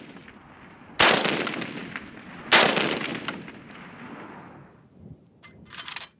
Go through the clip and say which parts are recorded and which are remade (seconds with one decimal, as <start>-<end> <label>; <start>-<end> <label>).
0.0-6.2 recorded